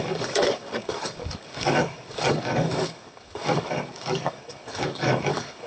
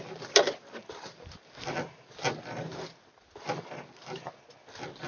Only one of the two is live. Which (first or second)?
second